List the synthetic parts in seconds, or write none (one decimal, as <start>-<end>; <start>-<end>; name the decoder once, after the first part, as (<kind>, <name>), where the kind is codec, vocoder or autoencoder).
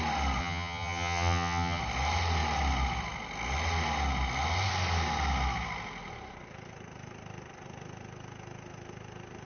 0.4-1.8 (vocoder, HiFi-GAN)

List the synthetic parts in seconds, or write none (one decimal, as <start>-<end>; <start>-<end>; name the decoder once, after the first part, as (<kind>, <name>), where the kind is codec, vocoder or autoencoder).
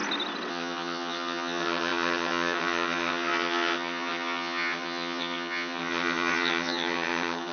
0.5-7.5 (vocoder, HiFi-GAN)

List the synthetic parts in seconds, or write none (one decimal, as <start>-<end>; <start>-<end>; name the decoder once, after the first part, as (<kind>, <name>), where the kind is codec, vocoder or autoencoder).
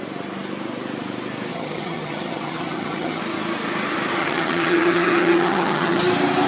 1.5-3.2 (vocoder, HiFi-GAN); 4.2-6.0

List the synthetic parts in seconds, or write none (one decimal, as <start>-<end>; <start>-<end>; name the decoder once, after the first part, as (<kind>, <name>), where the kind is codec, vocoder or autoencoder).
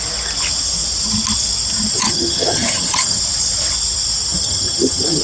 2.0-3.2 (vocoder, HiFi-GAN); 4.3-5.2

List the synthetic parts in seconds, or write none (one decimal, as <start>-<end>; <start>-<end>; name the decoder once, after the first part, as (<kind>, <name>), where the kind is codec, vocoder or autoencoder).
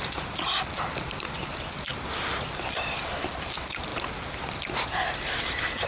none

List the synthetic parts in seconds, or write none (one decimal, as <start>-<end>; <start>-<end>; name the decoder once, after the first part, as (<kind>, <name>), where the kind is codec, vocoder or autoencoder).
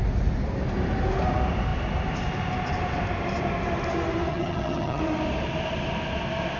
4.3-5.0 (vocoder, HiFi-GAN)